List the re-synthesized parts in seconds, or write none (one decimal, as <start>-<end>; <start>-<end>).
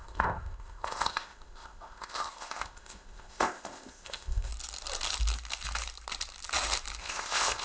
0.0-4.5; 7.0-7.6